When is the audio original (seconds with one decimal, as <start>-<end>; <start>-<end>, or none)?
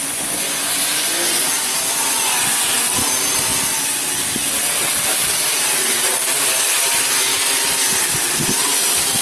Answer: 2.8-9.2